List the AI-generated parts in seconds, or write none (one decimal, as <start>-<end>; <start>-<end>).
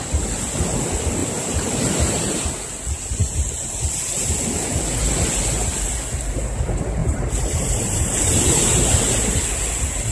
1.2-2.4; 7.0-9.0